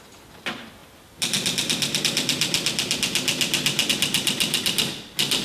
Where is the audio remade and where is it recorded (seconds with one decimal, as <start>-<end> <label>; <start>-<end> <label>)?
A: 0.0-5.4 recorded